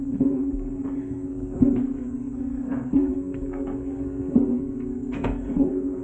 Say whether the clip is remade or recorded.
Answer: remade